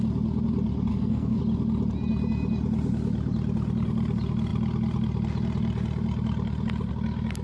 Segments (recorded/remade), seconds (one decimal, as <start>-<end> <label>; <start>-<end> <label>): 0.0-0.9 recorded; 0.9-1.4 remade; 1.4-7.4 recorded